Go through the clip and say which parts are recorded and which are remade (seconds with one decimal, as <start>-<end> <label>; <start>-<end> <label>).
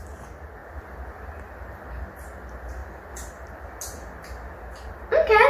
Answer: 0.0-5.5 recorded